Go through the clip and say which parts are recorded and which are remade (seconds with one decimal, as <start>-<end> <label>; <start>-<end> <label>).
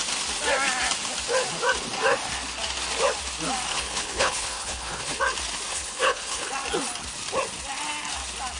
0.0-3.7 recorded; 3.7-5.2 remade; 5.2-5.7 recorded; 5.7-6.5 remade; 6.5-8.6 recorded